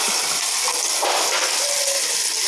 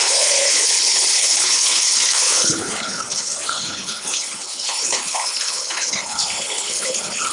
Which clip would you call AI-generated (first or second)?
second